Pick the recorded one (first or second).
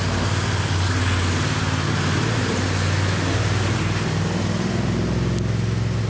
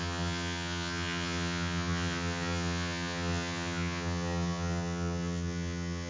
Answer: first